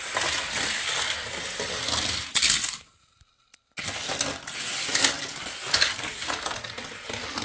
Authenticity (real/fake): real